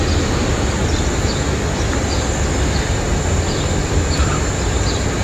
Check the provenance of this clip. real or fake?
real